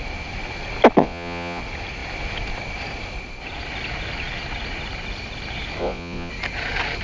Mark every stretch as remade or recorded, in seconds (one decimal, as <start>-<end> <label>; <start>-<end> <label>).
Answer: 0.0-1.0 recorded; 1.0-1.6 remade; 1.6-5.8 recorded; 5.8-6.3 remade; 6.3-7.0 recorded